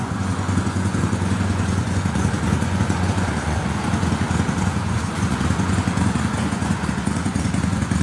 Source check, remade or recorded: remade